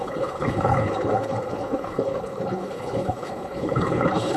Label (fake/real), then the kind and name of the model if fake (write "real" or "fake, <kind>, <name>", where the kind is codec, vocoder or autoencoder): fake, codec, HILCodec